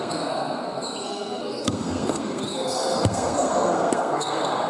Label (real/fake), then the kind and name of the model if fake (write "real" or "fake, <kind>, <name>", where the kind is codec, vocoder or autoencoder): fake, codec, SNAC